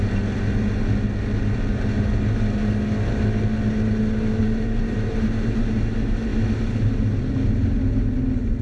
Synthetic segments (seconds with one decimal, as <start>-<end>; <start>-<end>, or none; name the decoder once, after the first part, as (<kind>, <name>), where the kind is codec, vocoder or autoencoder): 4.4-5.7 (vocoder, BigVGAN v2)